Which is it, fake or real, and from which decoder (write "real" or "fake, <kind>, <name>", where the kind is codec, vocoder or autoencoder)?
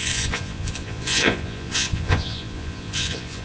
fake, vocoder, Vocos